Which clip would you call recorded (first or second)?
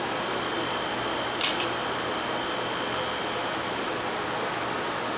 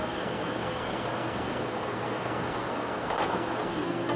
first